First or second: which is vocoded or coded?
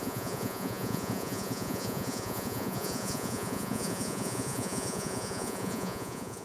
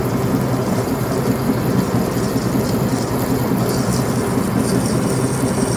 first